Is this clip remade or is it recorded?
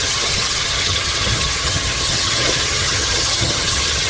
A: remade